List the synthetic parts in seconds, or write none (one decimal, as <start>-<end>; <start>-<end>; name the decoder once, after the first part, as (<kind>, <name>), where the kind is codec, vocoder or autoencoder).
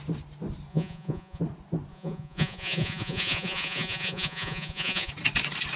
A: 0.7-1.4 (vocoder, Vocos); 1.9-5.1